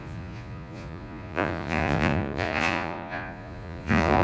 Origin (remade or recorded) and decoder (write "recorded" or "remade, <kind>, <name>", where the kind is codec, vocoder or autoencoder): remade, vocoder, Vocos